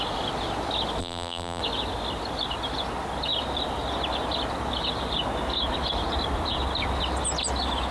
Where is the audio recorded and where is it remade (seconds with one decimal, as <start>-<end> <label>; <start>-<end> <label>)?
0.0-1.0 recorded; 1.0-1.6 remade; 1.6-7.9 recorded